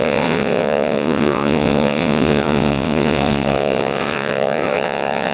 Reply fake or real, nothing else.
fake